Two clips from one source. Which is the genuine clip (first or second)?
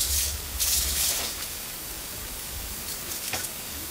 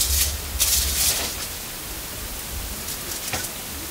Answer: second